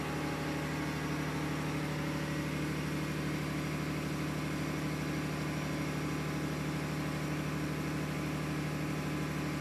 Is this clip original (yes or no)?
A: yes